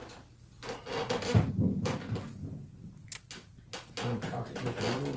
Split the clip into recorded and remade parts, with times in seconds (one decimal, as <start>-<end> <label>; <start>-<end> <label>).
0.0-5.2 recorded